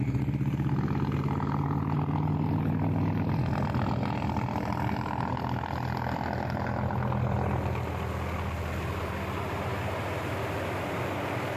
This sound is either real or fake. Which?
real